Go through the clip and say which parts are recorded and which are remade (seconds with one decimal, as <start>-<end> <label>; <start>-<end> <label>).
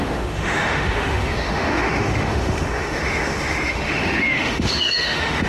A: 0.0-5.5 remade